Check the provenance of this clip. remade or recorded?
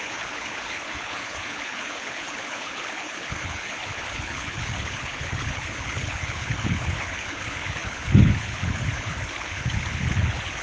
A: remade